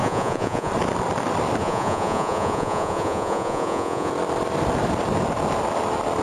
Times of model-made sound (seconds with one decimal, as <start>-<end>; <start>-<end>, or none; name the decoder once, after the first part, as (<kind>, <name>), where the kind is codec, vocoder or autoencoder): 0.0-0.7 (vocoder, Vocos); 1.6-4.1